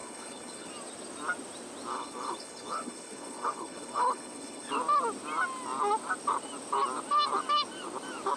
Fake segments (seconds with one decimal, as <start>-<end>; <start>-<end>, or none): 0.0-0.7; 1.9-4.7